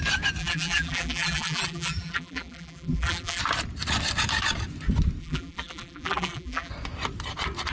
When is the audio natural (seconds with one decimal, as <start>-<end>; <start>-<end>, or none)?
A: 0.0-0.4; 3.4-5.2; 6.7-7.7